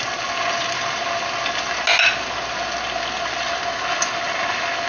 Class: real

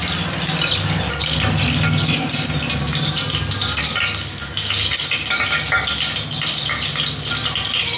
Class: real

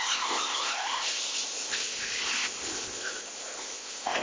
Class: fake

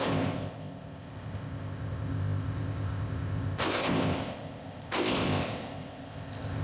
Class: fake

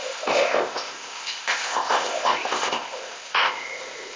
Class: fake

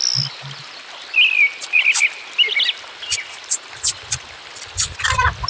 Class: real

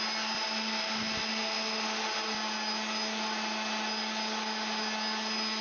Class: real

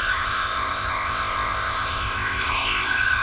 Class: fake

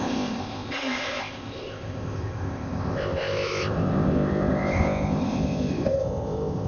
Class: fake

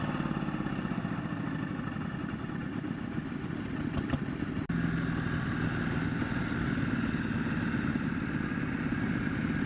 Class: real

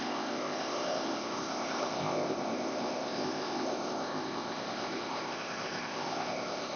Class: fake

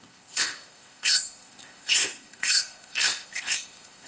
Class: fake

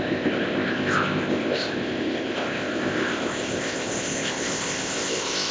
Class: fake